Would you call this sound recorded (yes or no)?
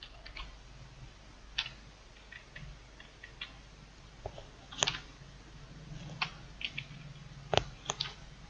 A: yes